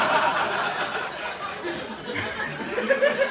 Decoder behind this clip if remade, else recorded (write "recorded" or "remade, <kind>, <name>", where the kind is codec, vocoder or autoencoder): recorded